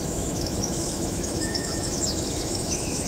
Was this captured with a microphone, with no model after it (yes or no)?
no